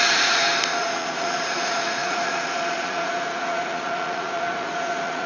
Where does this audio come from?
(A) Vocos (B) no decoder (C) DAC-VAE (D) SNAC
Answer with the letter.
A